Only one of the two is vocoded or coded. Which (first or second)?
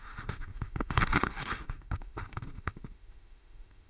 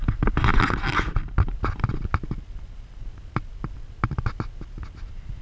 first